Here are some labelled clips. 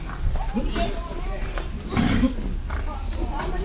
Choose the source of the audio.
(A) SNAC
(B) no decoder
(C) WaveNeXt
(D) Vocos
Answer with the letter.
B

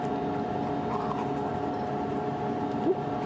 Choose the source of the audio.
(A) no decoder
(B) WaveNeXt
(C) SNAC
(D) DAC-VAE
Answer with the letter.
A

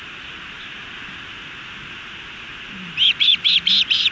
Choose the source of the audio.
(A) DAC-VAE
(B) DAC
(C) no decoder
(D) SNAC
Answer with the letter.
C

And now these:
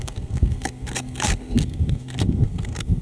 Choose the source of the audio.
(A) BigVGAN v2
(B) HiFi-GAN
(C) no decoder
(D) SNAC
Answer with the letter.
D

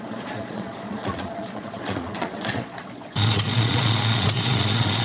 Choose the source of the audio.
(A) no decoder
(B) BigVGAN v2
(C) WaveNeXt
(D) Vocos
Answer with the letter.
D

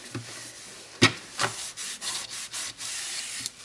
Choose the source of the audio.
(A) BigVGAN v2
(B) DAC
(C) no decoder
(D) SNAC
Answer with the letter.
C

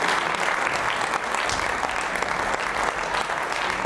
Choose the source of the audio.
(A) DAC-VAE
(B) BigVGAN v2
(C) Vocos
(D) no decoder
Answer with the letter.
D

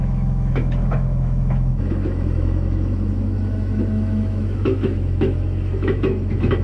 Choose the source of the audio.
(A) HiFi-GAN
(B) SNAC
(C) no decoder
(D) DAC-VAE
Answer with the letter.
D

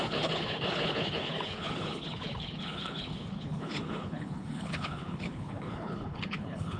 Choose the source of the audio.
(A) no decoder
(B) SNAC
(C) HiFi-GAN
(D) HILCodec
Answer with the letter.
D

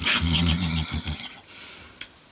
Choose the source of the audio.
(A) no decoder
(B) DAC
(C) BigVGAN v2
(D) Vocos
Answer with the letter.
A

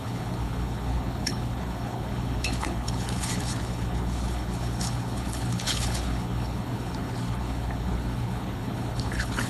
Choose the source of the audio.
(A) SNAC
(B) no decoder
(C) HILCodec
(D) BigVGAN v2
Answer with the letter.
C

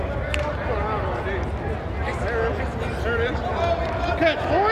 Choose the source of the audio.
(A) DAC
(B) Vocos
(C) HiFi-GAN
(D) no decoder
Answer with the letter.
D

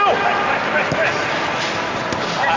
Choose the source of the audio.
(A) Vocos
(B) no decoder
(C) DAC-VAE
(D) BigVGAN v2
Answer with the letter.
B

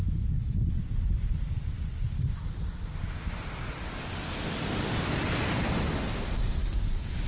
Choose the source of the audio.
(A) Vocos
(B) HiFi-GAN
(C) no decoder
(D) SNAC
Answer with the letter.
C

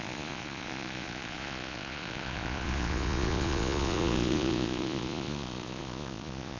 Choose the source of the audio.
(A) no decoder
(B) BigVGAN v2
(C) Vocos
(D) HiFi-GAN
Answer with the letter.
C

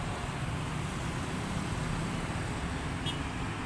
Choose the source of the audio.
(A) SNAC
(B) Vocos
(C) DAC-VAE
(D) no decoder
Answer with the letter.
D